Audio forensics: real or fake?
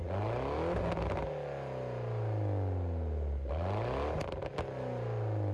real